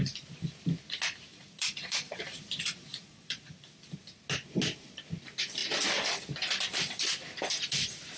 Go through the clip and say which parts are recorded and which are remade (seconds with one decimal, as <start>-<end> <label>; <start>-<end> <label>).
0.0-1.3 recorded; 1.3-2.2 remade; 2.2-2.9 recorded; 2.9-3.5 remade; 3.5-8.2 recorded